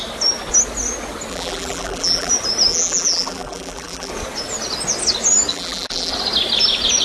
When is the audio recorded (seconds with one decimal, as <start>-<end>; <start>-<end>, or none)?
0.0-1.3; 2.3-2.7; 4.1-5.5; 6.1-7.0